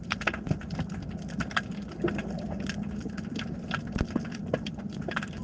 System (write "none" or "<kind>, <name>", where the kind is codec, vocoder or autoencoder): none